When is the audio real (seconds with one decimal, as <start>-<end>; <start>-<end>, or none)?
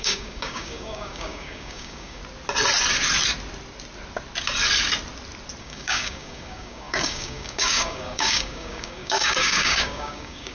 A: 2.2-5.6